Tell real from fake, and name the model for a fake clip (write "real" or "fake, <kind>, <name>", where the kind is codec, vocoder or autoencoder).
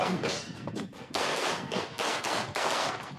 fake, codec, SNAC